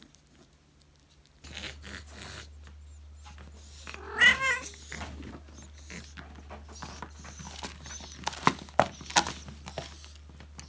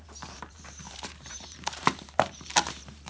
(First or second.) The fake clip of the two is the second